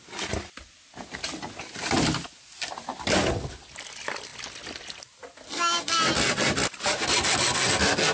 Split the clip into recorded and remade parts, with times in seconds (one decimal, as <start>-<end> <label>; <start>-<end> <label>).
0.0-8.1 recorded